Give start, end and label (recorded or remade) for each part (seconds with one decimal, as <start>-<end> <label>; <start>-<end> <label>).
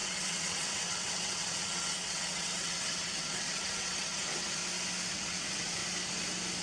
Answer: 0.0-4.6 remade; 4.6-5.1 recorded; 5.1-5.8 remade; 5.8-6.6 recorded